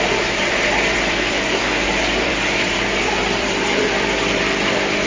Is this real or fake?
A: fake